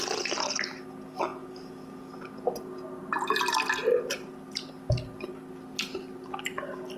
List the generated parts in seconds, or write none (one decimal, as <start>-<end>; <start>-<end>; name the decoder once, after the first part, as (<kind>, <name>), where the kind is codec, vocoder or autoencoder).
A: none